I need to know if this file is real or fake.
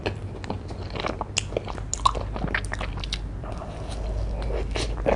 real